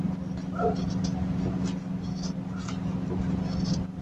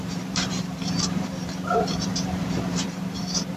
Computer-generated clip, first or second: second